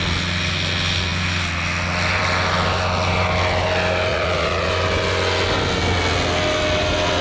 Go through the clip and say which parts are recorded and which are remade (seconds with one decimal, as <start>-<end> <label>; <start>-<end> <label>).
0.0-4.1 recorded; 4.1-4.7 remade; 4.7-7.2 recorded